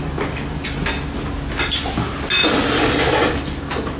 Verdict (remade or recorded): recorded